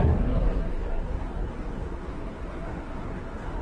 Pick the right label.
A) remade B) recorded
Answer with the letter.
A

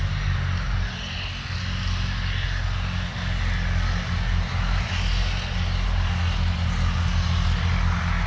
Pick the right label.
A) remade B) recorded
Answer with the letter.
B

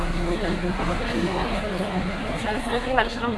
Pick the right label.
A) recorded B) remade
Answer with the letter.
B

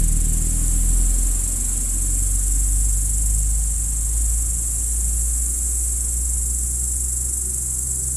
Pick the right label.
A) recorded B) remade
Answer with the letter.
A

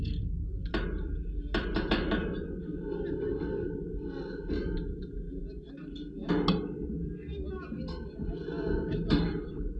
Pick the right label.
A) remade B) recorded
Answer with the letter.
B